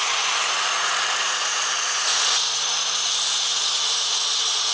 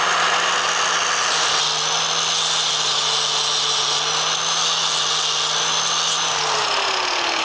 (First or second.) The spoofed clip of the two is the first